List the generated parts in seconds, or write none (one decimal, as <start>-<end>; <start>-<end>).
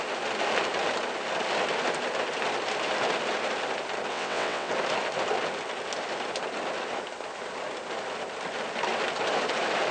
4.1-4.7